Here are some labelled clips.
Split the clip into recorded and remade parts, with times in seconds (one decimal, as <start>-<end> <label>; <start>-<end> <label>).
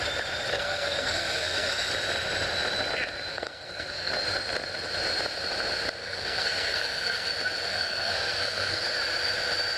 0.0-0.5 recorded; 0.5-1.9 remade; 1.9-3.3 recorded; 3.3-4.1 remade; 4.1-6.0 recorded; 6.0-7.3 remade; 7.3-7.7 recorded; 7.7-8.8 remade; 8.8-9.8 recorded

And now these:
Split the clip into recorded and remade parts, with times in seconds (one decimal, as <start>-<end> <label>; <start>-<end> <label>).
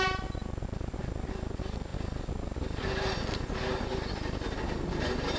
0.0-5.4 recorded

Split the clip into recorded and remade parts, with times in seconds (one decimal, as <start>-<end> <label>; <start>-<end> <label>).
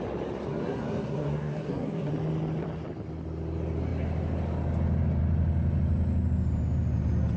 0.0-0.5 recorded; 0.5-2.1 remade; 2.1-7.4 recorded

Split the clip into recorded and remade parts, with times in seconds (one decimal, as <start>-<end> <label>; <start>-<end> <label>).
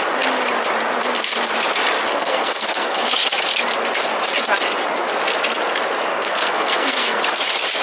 0.0-2.1 recorded; 2.1-3.0 remade; 3.0-6.1 recorded; 6.1-7.2 remade; 7.2-7.8 recorded